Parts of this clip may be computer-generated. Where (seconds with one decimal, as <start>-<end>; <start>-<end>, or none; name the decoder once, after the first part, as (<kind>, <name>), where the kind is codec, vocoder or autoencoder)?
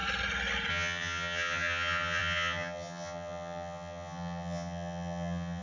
0.7-5.6 (vocoder, HiFi-GAN)